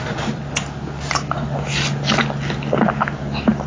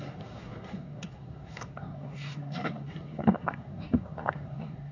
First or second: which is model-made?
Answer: second